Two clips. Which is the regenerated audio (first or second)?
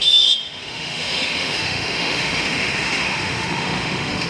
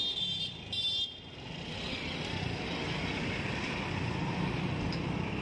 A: first